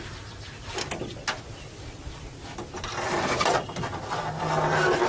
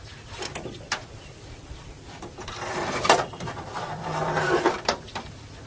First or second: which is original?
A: first